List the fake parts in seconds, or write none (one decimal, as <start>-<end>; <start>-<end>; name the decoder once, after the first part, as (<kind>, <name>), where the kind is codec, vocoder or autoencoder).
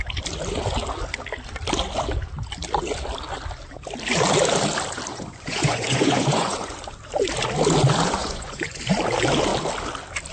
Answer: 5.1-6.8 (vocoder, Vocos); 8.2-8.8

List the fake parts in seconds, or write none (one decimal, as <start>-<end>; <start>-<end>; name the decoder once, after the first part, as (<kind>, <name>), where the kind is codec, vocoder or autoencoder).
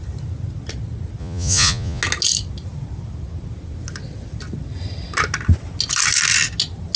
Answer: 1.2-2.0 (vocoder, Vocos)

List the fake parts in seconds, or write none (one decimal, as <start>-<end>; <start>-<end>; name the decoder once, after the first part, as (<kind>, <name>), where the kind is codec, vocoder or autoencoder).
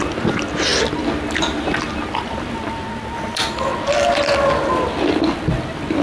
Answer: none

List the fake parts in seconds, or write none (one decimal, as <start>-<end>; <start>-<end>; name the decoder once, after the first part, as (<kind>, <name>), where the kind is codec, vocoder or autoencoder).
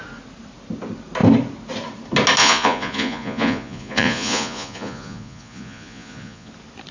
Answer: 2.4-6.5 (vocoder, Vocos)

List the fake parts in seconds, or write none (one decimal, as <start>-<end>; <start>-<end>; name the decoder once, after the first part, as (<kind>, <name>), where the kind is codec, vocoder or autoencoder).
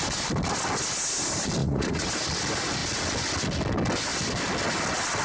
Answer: 1.6-2.1 (vocoder, Vocos)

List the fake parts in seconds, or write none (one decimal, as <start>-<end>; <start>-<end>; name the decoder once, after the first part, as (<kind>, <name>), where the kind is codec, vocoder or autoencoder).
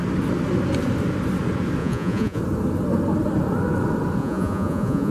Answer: 1.8-2.4 (vocoder, Vocos); 4.2-5.1